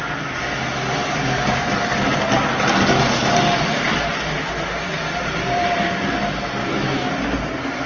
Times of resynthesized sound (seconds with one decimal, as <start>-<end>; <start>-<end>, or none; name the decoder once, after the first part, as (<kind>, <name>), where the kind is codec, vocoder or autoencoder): 6.6-7.1 (autoencoder, DAC-VAE)

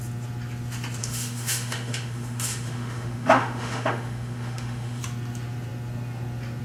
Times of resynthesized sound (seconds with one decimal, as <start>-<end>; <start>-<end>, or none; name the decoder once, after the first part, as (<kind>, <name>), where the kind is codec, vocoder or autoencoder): 1.0-5.0 (autoencoder, DAC-VAE)

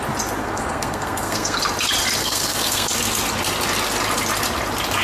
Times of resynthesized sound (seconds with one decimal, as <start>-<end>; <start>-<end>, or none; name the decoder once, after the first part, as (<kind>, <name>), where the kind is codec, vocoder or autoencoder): 0.4-1.6 (codec, SNAC); 2.2-2.9

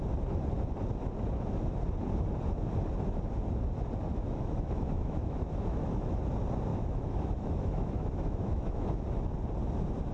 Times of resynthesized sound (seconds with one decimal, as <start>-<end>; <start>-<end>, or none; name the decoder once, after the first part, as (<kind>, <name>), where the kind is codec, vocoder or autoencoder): 4.1-6.2 (autoencoder, DAC-VAE); 6.7-9.0